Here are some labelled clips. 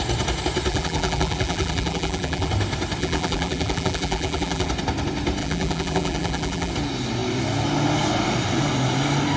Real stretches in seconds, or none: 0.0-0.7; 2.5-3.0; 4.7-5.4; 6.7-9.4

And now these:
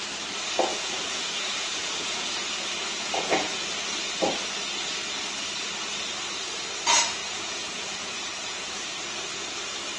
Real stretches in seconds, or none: 0.0-0.7; 3.6-7.2; 9.0-10.0

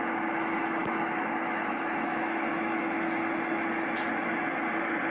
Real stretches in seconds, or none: 0.0-0.8; 3.2-5.1

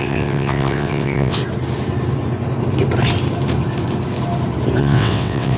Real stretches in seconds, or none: 1.4-4.8

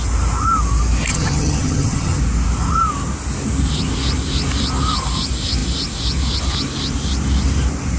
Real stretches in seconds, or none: 0.0-1.1; 2.2-8.0

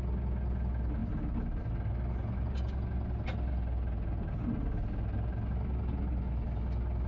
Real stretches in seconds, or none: 0.0-7.1